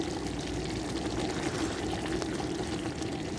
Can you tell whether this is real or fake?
real